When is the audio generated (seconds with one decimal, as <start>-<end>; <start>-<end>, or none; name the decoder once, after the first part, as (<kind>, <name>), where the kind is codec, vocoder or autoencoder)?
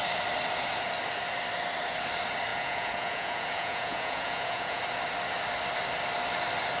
2.5-4.8 (vocoder, Vocos)